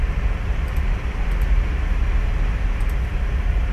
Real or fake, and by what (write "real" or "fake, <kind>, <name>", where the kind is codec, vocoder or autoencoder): real